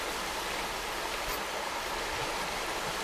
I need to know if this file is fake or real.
real